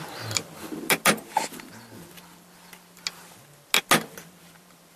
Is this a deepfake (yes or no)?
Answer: no